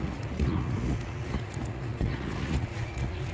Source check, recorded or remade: remade